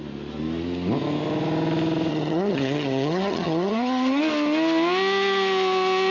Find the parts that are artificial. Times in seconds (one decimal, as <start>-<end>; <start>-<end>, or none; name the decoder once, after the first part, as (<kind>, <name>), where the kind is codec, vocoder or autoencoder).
2.1-4.2 (vocoder, HiFi-GAN)